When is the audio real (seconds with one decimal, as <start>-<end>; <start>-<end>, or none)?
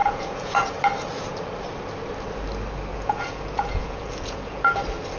0.7-2.9; 4.8-5.2